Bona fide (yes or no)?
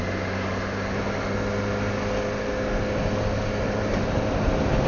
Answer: yes